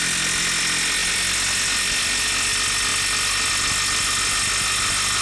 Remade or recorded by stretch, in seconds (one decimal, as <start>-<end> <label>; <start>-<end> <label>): 0.0-5.2 recorded